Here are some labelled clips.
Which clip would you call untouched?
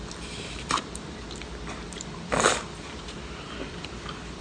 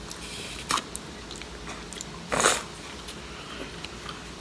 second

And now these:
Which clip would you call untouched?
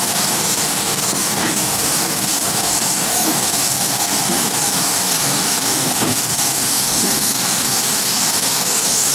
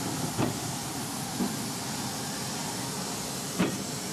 second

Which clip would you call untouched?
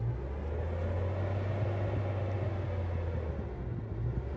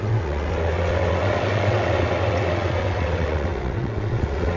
first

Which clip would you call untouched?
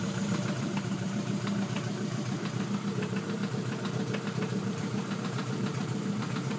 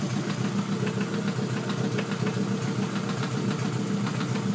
second